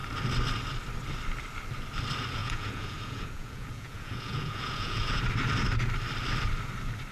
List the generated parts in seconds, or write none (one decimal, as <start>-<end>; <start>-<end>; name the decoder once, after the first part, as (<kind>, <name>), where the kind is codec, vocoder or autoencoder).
2.4-5.2 (vocoder, Vocos)